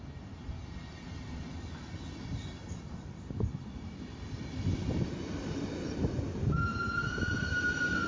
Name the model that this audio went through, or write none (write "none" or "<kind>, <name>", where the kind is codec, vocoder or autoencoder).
none